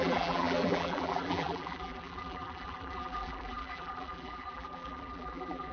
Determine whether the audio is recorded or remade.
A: remade